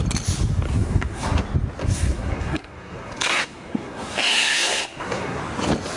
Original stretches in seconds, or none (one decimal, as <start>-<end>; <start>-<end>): 0.0-0.7; 1.4-1.8; 5.4-6.0